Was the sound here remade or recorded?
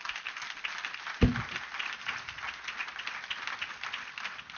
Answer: recorded